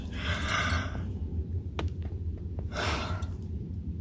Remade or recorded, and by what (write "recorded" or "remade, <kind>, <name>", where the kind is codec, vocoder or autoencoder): remade, vocoder, BigVGAN v2